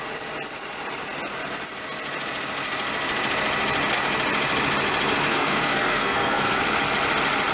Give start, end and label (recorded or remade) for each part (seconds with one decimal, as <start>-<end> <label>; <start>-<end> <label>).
0.0-5.3 recorded; 5.3-6.6 remade; 6.6-7.5 recorded